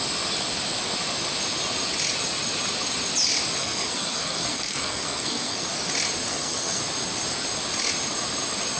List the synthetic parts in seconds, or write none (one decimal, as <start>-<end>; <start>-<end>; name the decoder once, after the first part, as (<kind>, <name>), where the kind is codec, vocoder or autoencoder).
3.6-5.7 (codec, SNAC); 6.3-6.8